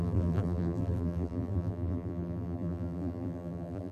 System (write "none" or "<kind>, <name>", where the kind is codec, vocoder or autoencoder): vocoder, BigVGAN v2